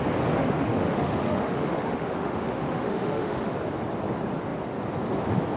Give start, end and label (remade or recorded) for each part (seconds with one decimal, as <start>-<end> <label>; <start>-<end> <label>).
0.0-0.4 recorded; 0.4-3.5 remade; 3.5-5.6 recorded